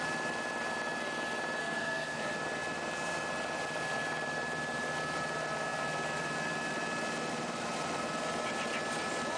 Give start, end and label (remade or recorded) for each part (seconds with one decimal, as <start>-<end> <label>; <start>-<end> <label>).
0.0-1.6 recorded; 1.6-2.2 remade; 2.2-9.4 recorded